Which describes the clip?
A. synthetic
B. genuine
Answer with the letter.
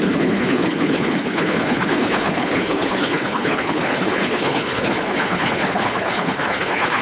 A